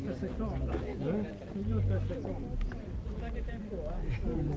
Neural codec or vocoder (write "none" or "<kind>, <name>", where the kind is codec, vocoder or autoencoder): none